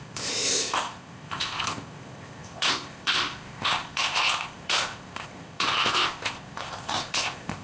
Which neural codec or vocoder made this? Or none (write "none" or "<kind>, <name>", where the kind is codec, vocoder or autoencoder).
codec, ZipCodec